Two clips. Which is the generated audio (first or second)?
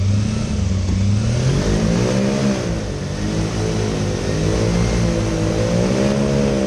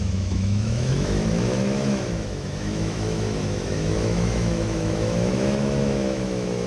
second